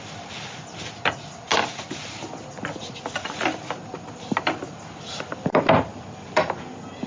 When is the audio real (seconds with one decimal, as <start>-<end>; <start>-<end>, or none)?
0.0-7.1